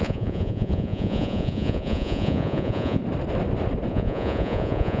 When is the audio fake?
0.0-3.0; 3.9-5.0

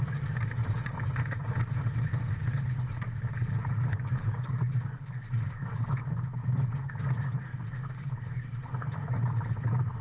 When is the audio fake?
none

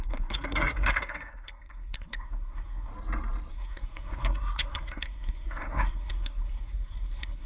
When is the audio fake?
0.0-2.9; 3.5-7.5

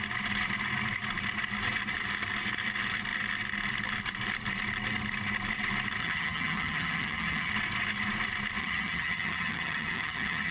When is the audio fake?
6.0-7.5; 8.6-10.5

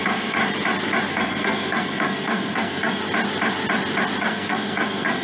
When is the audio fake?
0.0-0.4; 1.1-3.0; 4.2-5.2